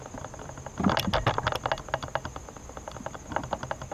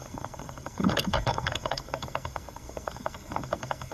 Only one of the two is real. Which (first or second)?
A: first